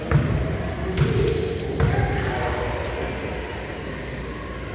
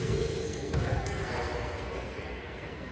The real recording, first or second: first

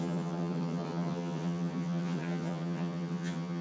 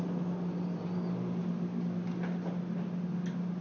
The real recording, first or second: second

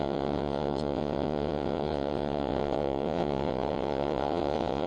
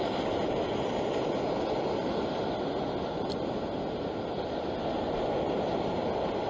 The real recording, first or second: second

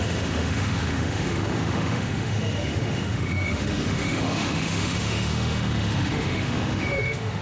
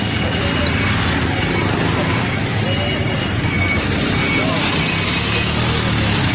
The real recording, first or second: second